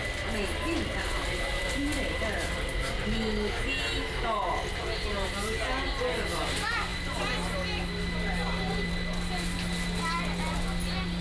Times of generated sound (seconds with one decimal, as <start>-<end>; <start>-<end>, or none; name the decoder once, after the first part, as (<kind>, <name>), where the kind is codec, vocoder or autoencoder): none